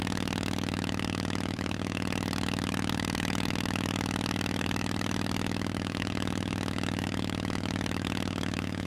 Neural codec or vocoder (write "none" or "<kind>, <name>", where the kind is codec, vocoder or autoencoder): autoencoder, DAC-VAE